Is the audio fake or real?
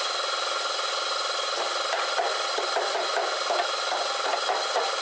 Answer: real